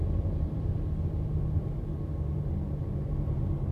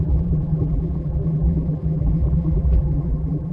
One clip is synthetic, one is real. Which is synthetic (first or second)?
second